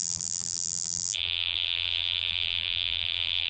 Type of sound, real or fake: fake